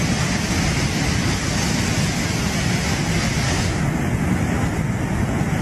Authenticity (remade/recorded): recorded